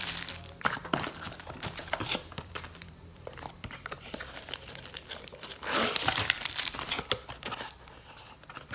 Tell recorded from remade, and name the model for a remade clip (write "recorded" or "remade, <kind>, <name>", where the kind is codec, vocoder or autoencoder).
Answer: remade, vocoder, BigVGAN v2